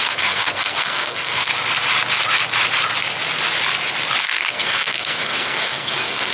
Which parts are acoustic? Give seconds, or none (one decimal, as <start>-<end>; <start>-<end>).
1.5-4.2